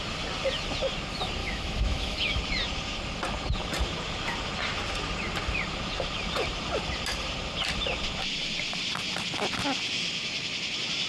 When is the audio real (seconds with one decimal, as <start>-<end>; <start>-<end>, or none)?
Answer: 0.0-1.4; 2.4-11.1